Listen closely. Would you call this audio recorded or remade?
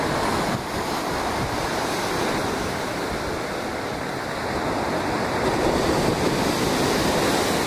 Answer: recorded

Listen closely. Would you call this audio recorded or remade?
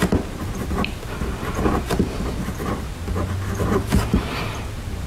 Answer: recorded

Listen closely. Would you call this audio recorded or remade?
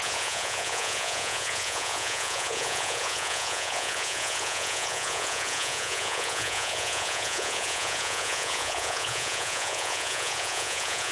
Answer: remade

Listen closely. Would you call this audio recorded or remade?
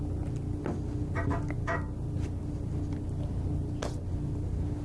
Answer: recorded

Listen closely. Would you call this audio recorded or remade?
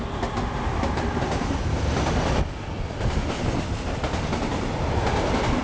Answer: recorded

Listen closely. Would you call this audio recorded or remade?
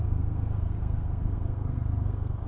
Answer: remade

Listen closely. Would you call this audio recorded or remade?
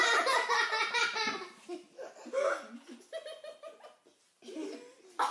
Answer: recorded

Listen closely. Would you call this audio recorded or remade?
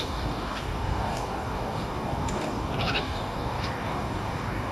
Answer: remade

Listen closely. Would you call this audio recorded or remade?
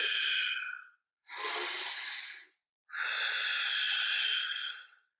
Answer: recorded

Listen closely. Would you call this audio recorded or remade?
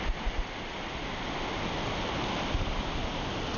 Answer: recorded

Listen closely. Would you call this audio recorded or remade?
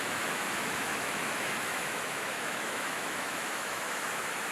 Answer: remade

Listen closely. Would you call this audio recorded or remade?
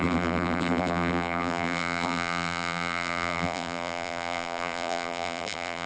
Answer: remade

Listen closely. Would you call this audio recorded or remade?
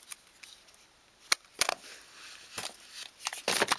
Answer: recorded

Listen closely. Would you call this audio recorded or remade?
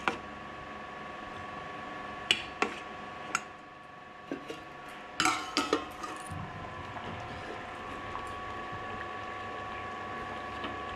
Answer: recorded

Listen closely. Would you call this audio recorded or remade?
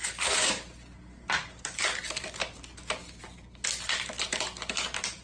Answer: recorded